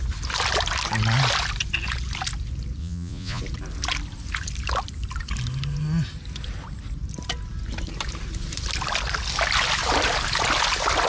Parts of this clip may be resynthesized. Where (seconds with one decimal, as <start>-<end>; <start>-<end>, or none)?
2.8-3.4